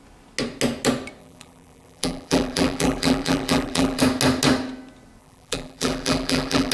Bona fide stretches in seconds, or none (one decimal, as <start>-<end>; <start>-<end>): 0.0-1.2; 4.0-5.2